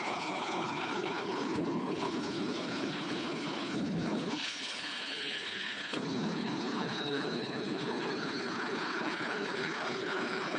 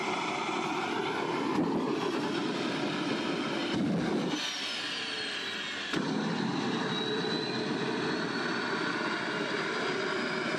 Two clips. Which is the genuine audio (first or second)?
second